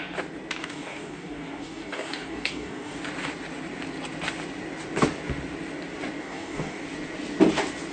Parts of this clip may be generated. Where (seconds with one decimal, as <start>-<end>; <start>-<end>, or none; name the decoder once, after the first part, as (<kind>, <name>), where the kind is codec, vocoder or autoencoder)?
0.6-3.0 (codec, DAC); 6.2-6.8

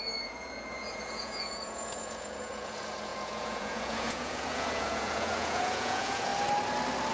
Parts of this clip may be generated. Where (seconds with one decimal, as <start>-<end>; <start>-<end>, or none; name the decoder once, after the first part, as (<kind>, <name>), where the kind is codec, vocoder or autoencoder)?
0.0-6.3 (vocoder, Vocos)

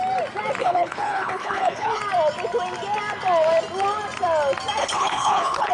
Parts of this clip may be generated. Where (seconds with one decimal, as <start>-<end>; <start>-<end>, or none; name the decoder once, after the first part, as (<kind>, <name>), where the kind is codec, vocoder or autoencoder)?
0.6-2.0 (codec, HILCodec); 4.8-5.7

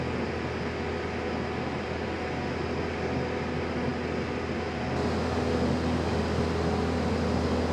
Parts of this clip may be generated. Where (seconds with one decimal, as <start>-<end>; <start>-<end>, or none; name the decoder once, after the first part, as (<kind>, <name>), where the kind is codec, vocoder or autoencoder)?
none

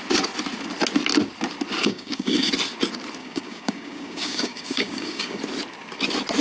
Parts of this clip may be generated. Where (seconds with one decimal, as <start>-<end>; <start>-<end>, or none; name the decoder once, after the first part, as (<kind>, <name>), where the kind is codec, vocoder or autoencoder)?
1.8-2.5 (codec, DAC); 3.2-5.4

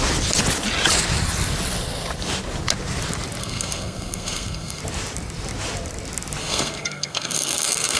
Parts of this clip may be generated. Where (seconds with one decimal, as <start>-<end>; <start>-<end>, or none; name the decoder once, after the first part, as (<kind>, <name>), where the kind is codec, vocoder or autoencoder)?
3.4-4.8 (codec, SNAC); 6.4-8.0